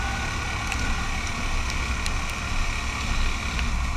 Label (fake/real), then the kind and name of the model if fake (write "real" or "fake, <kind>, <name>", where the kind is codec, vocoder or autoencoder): real